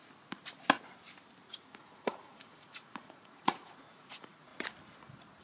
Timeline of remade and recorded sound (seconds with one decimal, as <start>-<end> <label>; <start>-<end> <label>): 0.0-1.4 recorded; 1.4-4.5 remade; 4.5-5.4 recorded